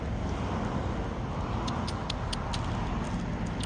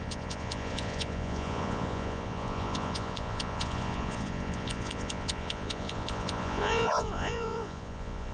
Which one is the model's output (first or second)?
second